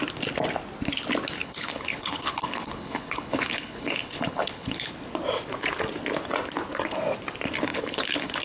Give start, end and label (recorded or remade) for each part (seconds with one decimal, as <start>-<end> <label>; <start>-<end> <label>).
0.0-1.4 recorded; 1.4-4.9 remade; 4.9-7.7 recorded; 7.7-8.4 remade